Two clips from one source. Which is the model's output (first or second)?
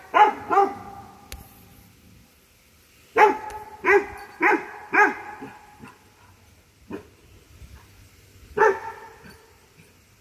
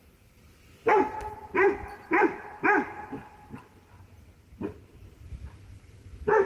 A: second